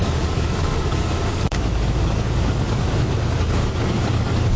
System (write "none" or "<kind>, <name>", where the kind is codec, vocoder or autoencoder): codec, DAC